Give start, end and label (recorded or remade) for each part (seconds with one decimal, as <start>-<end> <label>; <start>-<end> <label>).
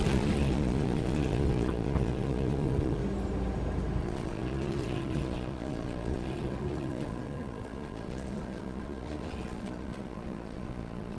0.0-3.0 remade; 3.0-4.0 recorded; 4.0-11.2 remade